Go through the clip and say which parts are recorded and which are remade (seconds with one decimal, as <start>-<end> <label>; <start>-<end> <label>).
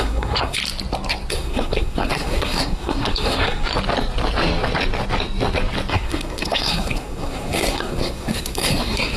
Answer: 0.0-0.6 remade; 0.6-1.3 recorded; 1.3-3.7 remade; 3.7-5.9 recorded; 5.9-9.2 remade